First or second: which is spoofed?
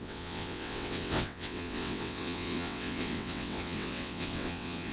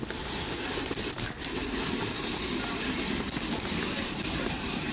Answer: first